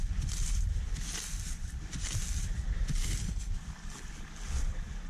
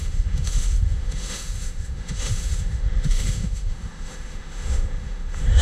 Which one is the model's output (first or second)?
second